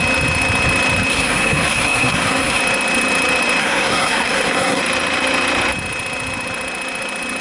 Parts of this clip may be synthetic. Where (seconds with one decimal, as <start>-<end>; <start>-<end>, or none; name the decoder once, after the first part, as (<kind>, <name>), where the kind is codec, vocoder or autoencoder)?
1.1-2.6 (codec, SNAC); 3.6-4.8